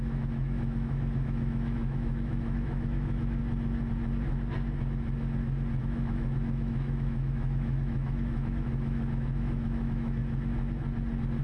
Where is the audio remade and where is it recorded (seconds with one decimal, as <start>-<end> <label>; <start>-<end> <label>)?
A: 0.0-3.4 remade; 3.4-5.8 recorded; 5.8-10.2 remade; 10.2-11.4 recorded